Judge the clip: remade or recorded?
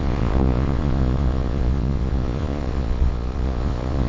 remade